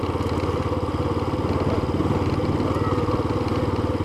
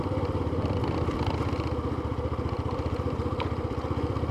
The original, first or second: first